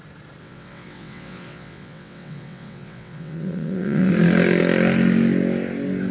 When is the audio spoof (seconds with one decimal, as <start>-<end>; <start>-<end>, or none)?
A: 0.4-4.1